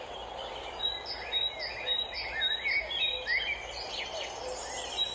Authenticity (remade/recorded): recorded